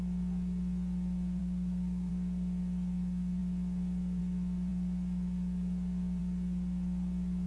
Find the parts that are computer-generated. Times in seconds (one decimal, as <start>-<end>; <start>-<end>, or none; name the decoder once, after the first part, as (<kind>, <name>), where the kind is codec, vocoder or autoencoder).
1.4-2.1 (codec, SNAC)